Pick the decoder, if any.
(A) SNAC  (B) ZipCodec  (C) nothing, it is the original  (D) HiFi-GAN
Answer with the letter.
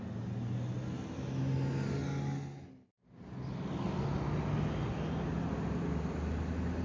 C